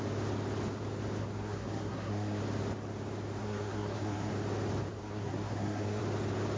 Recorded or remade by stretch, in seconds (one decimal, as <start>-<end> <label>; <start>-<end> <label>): 0.0-1.2 recorded; 1.2-2.4 remade; 2.4-3.4 recorded; 3.4-4.3 remade; 4.3-5.0 recorded; 5.0-6.0 remade; 6.0-6.6 recorded